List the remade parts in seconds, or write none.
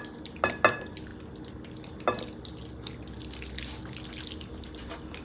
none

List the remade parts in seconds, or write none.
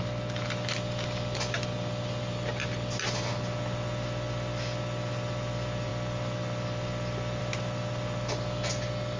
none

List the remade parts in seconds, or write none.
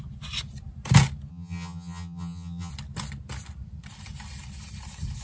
1.3-2.7 (vocoder, HiFi-GAN)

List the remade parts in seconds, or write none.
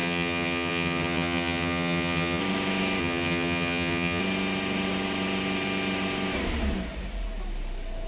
0.0-2.4 (vocoder, HiFi-GAN); 3.0-4.2